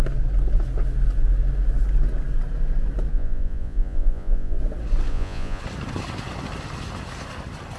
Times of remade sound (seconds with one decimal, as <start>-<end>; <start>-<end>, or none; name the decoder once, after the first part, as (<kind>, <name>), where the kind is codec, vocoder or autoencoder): 3.1-4.6 (vocoder, Vocos); 5.1-5.6